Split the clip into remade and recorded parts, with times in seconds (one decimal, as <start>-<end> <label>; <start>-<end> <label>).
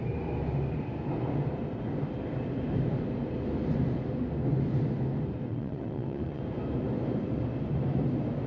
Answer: 0.0-5.5 recorded; 5.5-6.4 remade; 6.4-8.5 recorded